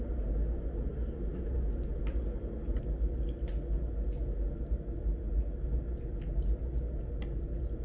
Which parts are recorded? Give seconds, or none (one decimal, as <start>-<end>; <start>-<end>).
0.0-7.8

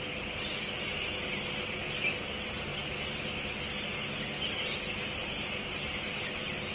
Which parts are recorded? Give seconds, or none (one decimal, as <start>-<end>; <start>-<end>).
0.0-6.7

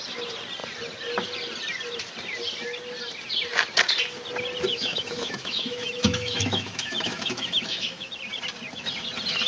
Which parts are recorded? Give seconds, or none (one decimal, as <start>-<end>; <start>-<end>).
0.0-4.7; 8.1-9.5

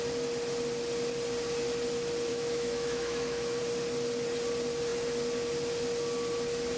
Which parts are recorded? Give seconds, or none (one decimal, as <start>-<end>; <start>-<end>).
0.0-2.3; 3.6-6.8

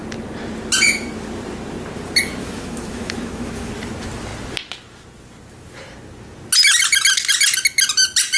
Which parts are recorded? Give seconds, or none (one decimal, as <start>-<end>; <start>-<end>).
0.0-2.4; 3.7-8.4